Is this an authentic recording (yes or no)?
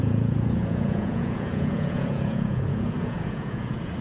no